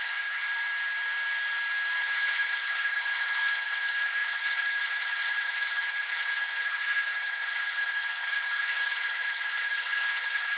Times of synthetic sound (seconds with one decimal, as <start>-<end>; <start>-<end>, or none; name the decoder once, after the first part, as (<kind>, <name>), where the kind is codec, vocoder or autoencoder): 0.0-0.5 (codec, HILCodec); 2.0-10.6